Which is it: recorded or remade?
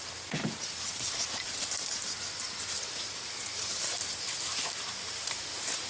remade